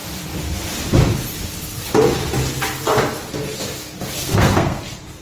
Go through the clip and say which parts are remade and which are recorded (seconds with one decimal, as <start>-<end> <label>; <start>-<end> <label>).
0.0-4.2 recorded; 4.2-4.8 remade; 4.8-5.2 recorded

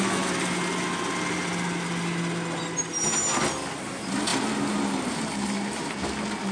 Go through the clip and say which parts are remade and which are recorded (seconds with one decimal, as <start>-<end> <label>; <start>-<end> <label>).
0.0-6.5 recorded

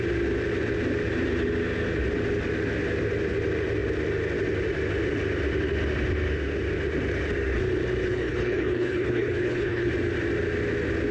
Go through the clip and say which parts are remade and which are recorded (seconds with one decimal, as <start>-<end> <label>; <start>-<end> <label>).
0.0-8.0 recorded; 8.0-9.9 remade; 9.9-11.1 recorded

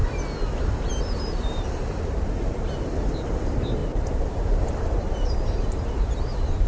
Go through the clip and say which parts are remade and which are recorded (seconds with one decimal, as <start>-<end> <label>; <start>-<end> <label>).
0.0-0.6 recorded; 0.6-3.8 remade; 3.8-4.4 recorded; 4.4-6.7 remade

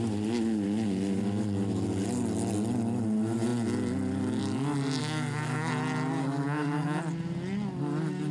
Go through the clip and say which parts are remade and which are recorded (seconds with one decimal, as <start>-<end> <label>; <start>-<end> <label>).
0.0-5.0 recorded; 5.0-5.7 remade; 5.7-6.2 recorded; 6.2-7.0 remade; 7.0-8.3 recorded

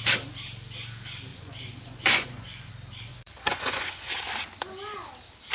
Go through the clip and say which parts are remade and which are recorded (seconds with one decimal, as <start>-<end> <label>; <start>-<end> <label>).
0.0-1.3 recorded; 1.3-2.7 remade; 2.7-3.1 recorded; 3.1-4.1 remade; 4.1-5.5 recorded

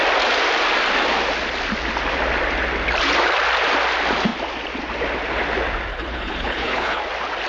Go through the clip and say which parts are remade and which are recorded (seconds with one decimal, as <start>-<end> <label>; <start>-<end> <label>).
0.0-5.9 recorded; 5.9-7.0 remade; 7.0-7.5 recorded